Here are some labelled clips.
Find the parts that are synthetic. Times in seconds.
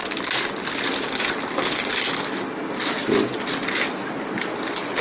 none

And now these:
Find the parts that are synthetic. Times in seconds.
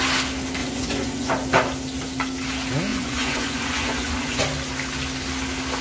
0.6-1.3; 2.9-4.4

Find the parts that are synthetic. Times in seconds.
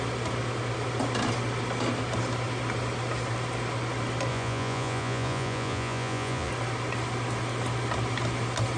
4.3-6.5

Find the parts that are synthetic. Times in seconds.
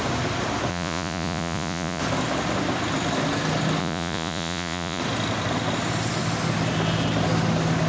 0.7-2.0; 3.8-5.0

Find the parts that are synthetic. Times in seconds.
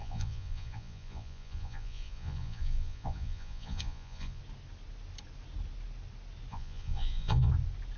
0.0-4.4; 6.5-7.5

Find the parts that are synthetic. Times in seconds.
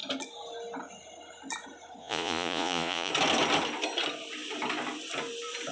2.0-3.1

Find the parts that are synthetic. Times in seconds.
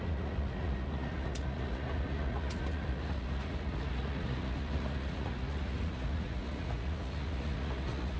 0.0-8.2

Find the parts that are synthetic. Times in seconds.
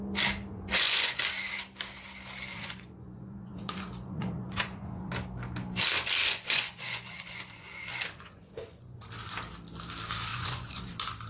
0.5-1.2; 2.5-5.1; 6.2-9.0; 10.3-10.9